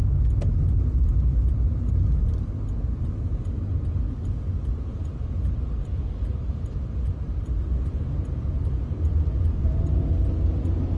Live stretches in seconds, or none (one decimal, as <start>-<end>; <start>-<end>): 0.0-6.3; 8.1-9.6; 10.1-11.0